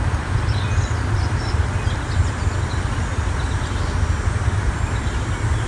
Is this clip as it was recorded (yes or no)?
yes